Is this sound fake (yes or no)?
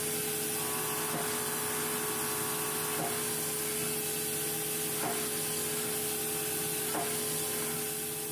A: no